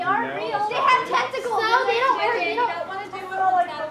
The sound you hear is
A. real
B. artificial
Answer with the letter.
A